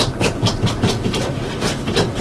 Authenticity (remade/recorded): recorded